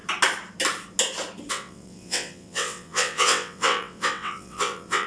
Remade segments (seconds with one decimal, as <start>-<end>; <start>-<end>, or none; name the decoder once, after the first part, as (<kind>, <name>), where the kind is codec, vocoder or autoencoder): 1.5-5.1 (vocoder, WaveNeXt)